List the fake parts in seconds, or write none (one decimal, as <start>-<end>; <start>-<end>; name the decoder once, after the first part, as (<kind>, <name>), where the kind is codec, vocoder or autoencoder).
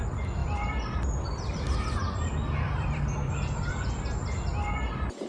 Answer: 0.4-3.3 (vocoder, BigVGAN v2)